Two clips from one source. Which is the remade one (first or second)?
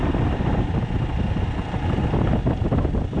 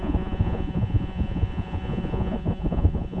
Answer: second